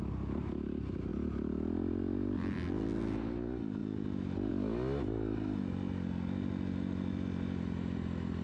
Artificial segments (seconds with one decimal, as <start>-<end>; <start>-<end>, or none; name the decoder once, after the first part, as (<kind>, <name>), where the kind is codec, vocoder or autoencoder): none